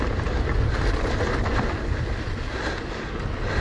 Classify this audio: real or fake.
real